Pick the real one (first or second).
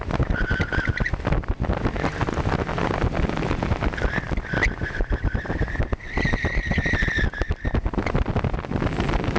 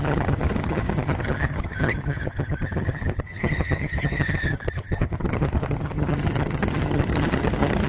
first